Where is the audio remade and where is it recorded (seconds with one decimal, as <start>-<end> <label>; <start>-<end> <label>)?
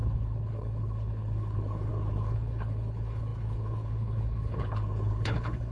0.0-5.7 remade